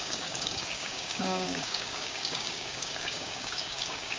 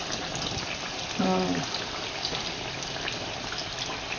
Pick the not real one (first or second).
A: first